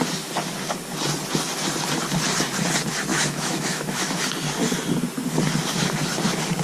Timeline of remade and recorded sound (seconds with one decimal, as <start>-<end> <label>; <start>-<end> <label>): 0.0-3.1 recorded; 3.1-4.2 remade; 4.2-6.6 recorded